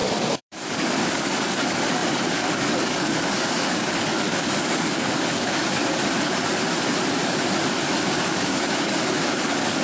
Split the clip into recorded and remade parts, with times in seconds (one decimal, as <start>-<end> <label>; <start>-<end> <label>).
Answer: 0.0-5.8 remade; 5.8-8.2 recorded; 8.2-9.8 remade